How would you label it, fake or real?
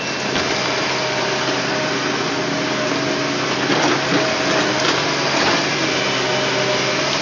real